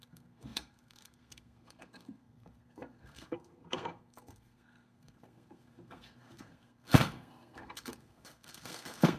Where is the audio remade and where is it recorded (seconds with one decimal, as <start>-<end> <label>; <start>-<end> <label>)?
0.0-9.2 remade